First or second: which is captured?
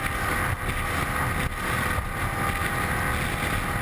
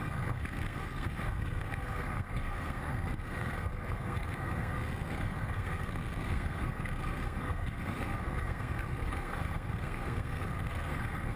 first